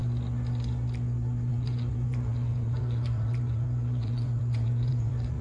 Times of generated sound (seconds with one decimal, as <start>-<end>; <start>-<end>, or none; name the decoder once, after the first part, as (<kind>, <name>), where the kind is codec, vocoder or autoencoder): 1.5-5.4 (vocoder, Vocos)